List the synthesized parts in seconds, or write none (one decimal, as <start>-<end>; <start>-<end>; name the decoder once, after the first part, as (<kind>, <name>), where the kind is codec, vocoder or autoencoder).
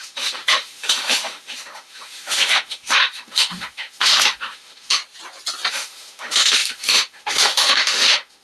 0.0-5.0 (autoencoder, DAC-VAE); 5.7-8.4